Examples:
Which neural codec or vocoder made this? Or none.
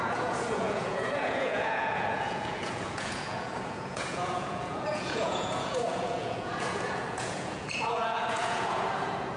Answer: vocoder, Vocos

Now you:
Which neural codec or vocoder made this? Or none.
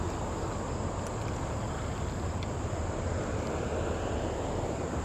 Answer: none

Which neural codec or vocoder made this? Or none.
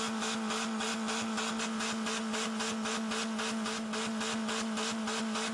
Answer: none